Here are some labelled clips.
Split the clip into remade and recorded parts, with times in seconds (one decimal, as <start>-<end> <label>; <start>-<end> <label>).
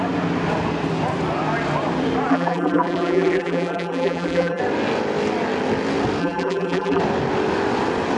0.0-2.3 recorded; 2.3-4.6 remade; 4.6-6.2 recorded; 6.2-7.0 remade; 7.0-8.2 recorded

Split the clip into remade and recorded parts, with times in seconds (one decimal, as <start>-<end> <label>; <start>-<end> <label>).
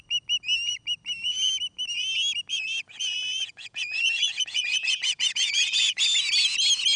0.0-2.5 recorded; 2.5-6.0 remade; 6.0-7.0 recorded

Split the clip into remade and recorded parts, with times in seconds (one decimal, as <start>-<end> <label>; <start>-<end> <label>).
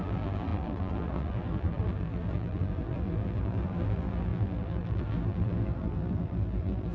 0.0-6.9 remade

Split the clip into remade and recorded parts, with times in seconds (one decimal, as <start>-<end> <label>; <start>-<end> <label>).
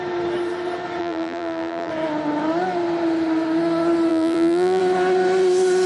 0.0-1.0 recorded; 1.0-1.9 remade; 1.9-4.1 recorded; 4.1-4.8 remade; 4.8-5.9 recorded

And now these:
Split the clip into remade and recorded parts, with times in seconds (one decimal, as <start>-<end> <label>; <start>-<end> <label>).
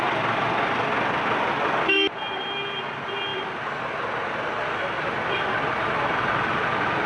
0.0-7.1 recorded